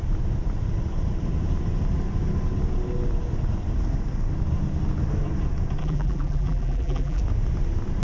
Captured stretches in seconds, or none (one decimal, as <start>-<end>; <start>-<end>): 0.0-5.8; 7.2-8.0